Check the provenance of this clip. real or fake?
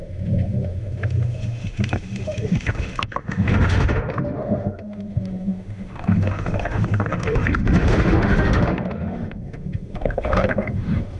fake